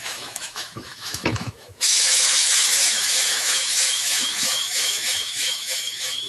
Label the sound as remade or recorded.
remade